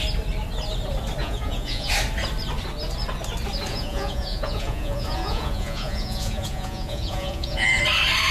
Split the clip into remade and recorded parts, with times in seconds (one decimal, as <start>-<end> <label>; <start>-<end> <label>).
0.0-1.2 recorded; 1.2-1.9 remade; 1.9-3.7 recorded; 3.7-7.7 remade; 7.7-8.3 recorded